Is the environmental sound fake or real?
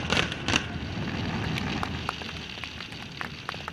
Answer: real